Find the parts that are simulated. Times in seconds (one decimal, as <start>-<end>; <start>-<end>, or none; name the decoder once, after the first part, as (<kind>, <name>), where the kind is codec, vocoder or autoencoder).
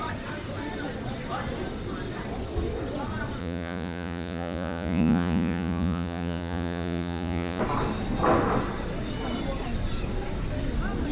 3.4-7.6 (vocoder, Vocos)